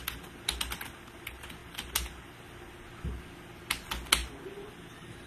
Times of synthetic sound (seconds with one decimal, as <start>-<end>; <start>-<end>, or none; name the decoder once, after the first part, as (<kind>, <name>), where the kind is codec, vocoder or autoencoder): none